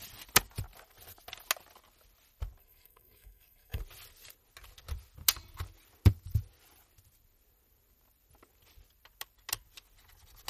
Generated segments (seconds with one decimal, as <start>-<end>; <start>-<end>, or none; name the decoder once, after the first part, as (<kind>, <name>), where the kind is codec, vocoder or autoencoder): 2.6-3.8 (codec, SNAC)